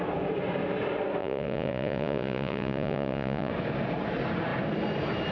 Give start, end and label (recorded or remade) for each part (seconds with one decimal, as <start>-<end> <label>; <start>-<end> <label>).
0.0-1.2 recorded; 1.2-3.5 remade; 3.5-5.3 recorded